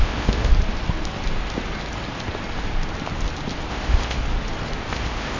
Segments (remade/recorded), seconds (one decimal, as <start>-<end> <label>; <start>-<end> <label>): 0.0-0.5 remade; 0.5-3.7 recorded; 3.7-4.2 remade; 4.2-4.9 recorded; 4.9-5.4 remade